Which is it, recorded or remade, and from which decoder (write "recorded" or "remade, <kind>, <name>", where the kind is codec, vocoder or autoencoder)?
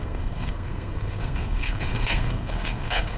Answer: remade, codec, SNAC